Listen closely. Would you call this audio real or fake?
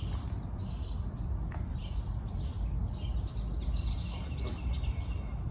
real